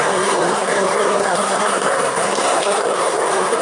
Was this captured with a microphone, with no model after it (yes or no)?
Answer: no